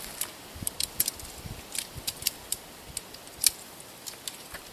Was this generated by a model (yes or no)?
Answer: no